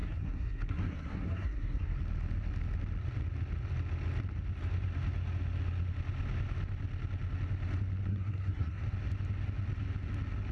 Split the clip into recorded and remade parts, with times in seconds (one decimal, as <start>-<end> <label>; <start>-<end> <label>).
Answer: 0.0-2.0 remade; 2.0-8.1 recorded; 8.1-8.8 remade; 8.8-10.5 recorded